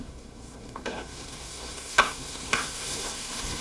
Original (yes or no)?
no